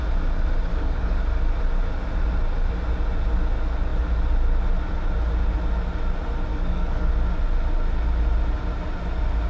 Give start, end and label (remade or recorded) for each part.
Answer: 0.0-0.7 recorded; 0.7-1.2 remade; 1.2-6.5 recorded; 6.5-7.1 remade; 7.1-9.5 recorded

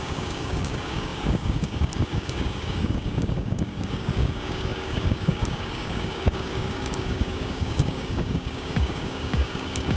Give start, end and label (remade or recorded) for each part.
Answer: 0.0-10.0 remade

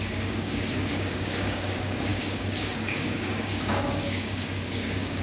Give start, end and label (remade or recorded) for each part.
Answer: 0.0-5.2 remade

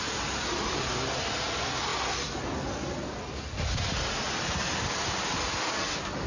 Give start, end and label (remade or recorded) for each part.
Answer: 0.0-6.3 recorded

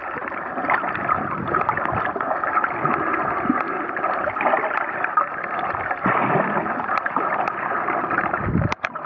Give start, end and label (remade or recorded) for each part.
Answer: 0.0-9.1 recorded

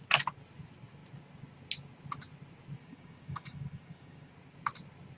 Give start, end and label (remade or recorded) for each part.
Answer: 0.0-2.8 recorded; 2.8-4.3 remade; 4.3-5.2 recorded

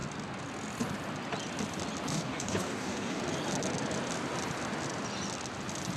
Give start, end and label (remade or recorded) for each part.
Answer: 0.0-2.1 recorded; 2.1-3.2 remade; 3.2-6.0 recorded

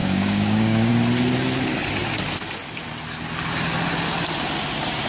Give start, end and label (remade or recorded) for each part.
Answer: 0.0-0.9 remade; 0.9-5.1 recorded